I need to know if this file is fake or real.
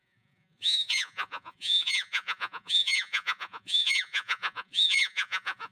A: fake